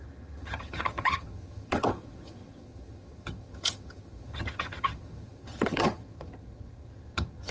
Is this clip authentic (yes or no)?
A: no